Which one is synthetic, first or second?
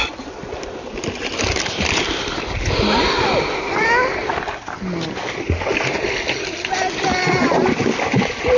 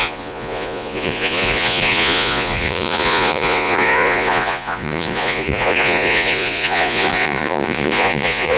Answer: second